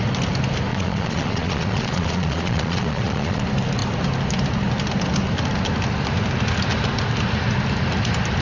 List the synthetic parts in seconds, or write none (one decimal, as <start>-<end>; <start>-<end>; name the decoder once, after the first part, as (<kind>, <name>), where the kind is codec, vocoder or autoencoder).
0.7-3.4 (vocoder, Vocos)